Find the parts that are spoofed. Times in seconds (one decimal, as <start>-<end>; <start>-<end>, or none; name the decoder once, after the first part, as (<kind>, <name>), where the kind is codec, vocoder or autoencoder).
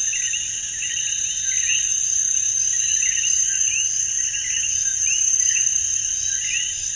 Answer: none